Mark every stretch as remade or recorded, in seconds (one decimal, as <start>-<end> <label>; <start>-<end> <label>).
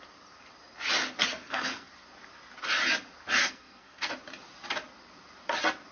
0.0-1.3 recorded; 1.3-1.9 remade; 1.9-3.4 recorded; 3.4-4.1 remade; 4.1-5.9 recorded